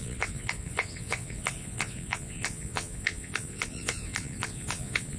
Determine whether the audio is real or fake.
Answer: fake